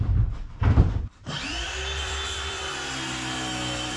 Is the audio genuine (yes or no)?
no